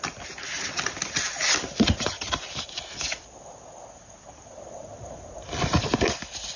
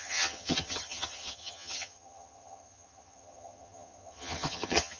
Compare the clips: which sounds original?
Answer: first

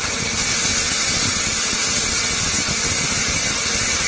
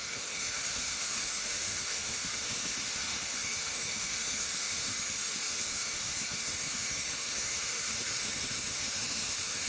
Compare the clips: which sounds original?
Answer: first